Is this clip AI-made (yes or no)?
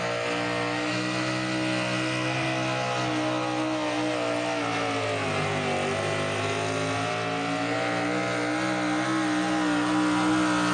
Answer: no